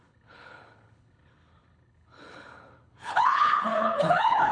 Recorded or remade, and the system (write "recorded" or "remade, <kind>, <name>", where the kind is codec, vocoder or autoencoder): remade, codec, HILCodec